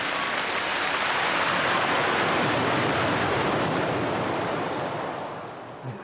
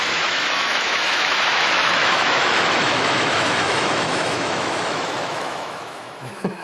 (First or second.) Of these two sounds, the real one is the first